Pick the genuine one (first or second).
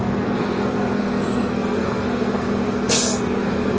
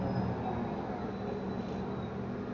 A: second